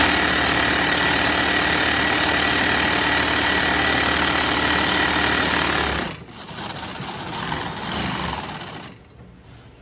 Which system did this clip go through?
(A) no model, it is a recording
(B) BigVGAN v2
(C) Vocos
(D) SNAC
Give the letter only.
A